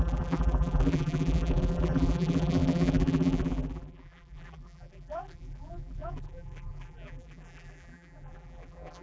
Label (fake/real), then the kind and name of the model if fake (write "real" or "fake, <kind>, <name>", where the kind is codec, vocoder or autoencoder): fake, vocoder, BigVGAN v2